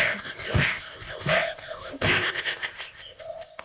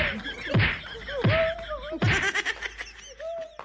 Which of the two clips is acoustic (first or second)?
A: second